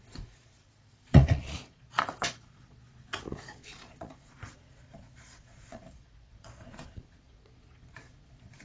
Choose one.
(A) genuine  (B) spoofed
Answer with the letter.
B